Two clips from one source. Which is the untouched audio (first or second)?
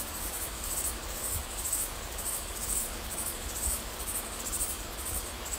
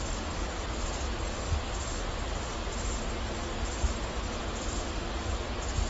second